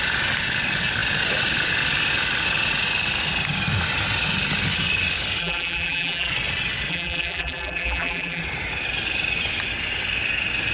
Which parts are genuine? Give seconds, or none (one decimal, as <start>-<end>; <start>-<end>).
0.0-5.4; 6.3-6.9; 8.4-10.7